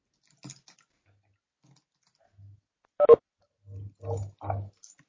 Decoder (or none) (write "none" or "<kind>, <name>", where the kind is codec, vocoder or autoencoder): none